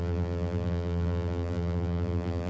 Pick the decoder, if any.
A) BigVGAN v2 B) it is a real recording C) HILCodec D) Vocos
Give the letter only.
A